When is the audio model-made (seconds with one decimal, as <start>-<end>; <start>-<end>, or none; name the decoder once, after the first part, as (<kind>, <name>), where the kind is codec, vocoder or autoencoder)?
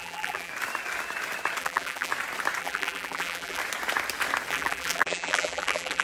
0.0-0.5 (vocoder, BigVGAN v2); 1.6-2.1; 2.6-3.6; 4.5-6.0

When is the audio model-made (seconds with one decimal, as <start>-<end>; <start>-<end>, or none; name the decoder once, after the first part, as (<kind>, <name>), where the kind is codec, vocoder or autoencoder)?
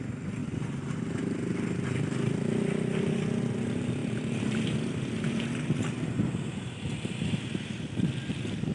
4.0-5.9 (vocoder, BigVGAN v2)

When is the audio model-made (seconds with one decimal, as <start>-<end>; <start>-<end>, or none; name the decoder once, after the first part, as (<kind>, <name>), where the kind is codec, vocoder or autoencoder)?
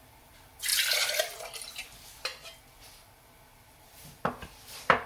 0.0-0.7 (vocoder, BigVGAN v2); 1.2-2.3; 3.8-5.1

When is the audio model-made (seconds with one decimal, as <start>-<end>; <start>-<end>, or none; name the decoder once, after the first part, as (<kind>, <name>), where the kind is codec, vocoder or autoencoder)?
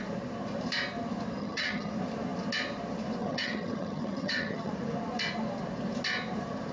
1.4-1.9 (vocoder, HiFi-GAN); 3.2-4.7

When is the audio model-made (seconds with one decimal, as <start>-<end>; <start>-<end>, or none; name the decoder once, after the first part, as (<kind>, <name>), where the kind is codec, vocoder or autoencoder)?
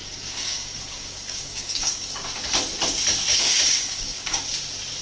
0.0-2.1 (codec, DAC); 3.3-4.4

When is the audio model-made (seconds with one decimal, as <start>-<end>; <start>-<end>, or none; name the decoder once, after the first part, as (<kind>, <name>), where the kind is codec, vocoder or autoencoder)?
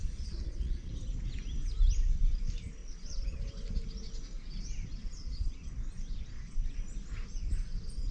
0.0-0.9 (vocoder, Vocos); 2.8-3.4; 5.0-5.5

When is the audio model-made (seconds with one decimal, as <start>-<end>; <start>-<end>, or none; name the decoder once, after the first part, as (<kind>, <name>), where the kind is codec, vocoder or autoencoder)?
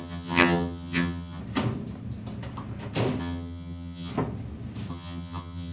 0.0-1.4 (vocoder, HiFi-GAN); 3.2-4.1; 4.9-5.7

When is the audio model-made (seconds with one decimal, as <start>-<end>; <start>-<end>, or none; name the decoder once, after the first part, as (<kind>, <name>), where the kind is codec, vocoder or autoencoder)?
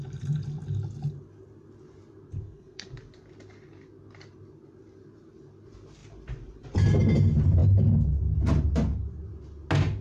2.3-2.9 (codec, SNAC)